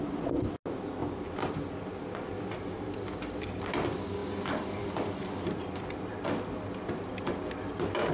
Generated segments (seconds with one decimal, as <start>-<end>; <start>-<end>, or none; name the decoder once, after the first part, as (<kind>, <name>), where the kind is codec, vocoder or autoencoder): 1.0-3.6 (vocoder, BigVGAN v2); 4.2-6.1